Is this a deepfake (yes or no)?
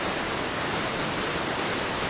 no